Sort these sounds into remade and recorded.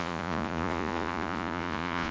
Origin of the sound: remade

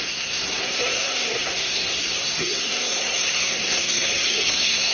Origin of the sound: remade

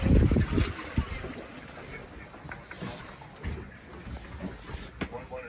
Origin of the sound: recorded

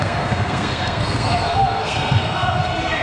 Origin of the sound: remade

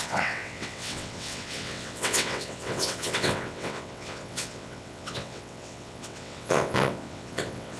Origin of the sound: remade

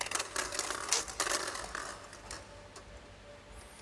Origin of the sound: recorded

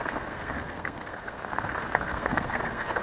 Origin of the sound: remade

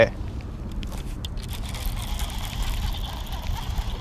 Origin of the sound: recorded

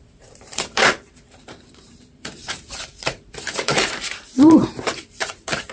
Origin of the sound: remade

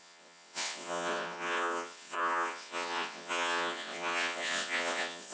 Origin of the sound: remade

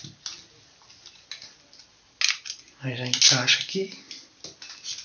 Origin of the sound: recorded